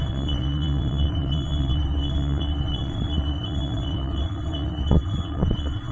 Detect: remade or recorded remade